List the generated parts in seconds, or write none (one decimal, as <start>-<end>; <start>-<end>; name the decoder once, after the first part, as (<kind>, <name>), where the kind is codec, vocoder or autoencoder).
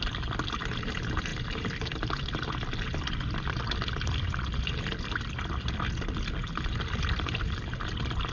none